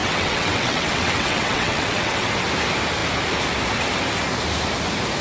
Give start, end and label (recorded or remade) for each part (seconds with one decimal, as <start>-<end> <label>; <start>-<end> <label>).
0.0-2.3 remade; 2.3-5.2 recorded